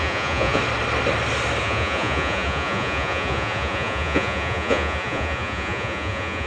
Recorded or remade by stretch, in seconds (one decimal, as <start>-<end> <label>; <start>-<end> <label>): 0.0-0.6 remade; 0.6-1.6 recorded; 1.6-6.5 remade